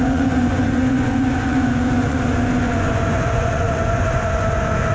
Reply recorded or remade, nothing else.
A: remade